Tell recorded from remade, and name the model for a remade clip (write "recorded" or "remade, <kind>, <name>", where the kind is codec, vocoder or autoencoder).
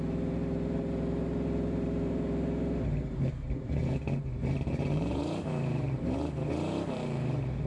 remade, vocoder, BigVGAN v2